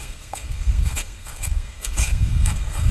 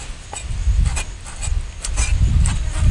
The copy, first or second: first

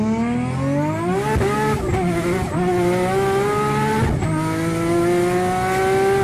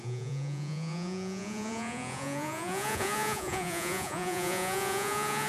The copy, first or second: second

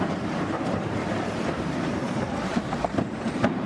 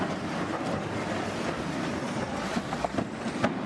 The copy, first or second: first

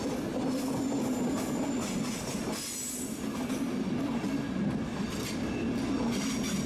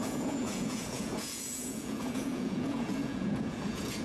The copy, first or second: second